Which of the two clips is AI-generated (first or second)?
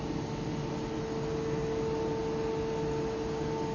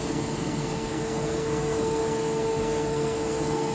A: second